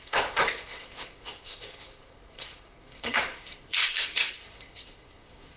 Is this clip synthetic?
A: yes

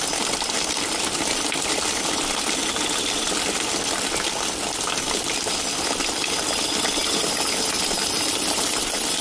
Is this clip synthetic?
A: no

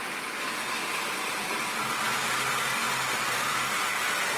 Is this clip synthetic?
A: no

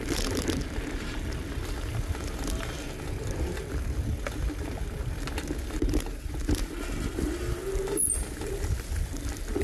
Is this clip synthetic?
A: no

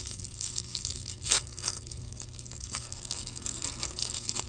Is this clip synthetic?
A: yes